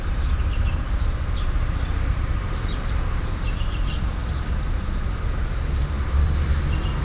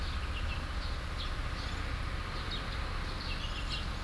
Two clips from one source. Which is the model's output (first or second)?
first